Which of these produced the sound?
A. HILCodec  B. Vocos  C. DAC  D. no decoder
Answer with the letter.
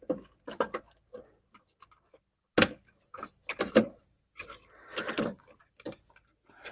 D